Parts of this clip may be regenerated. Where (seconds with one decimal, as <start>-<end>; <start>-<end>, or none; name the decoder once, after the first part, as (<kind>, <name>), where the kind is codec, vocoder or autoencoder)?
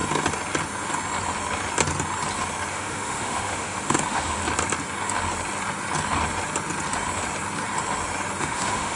2.7-4.4 (autoencoder, DAC-VAE); 8.4-9.0